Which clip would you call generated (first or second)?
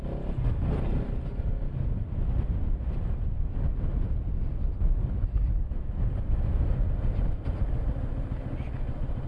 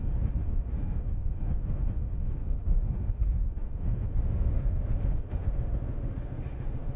second